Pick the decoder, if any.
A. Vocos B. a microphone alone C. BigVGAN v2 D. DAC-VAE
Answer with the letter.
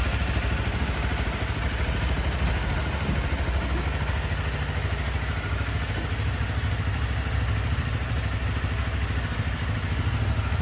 B